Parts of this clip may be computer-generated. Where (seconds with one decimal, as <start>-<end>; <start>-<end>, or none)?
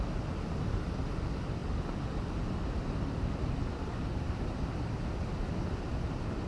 none